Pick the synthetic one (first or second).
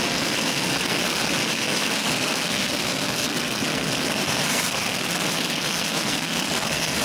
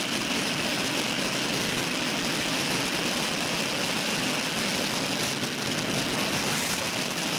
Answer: first